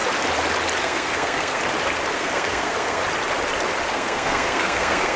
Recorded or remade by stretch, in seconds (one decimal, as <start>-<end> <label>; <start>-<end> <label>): 0.0-0.8 recorded; 0.8-1.6 remade; 1.6-2.1 recorded; 2.1-3.0 remade; 3.0-3.9 recorded; 3.9-5.2 remade